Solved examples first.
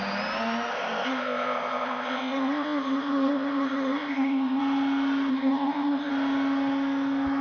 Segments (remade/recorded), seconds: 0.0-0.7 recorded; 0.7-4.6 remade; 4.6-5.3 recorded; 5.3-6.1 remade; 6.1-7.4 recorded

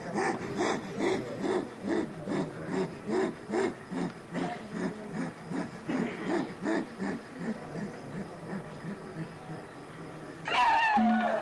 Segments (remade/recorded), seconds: 0.0-11.4 recorded

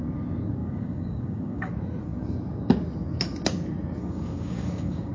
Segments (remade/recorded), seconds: 0.0-0.6 recorded; 0.6-1.7 remade; 1.7-4.0 recorded; 4.0-5.1 remade

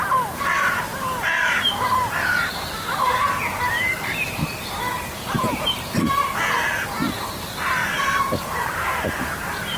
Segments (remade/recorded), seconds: 0.0-2.3 recorded; 2.3-6.3 remade; 6.3-7.8 recorded; 7.8-9.1 remade; 9.1-9.8 recorded

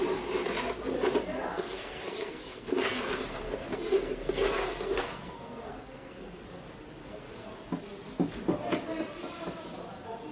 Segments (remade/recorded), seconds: 0.0-1.5 recorded; 1.5-6.4 remade; 6.4-7.0 recorded; 7.0-7.5 remade; 7.5-10.3 recorded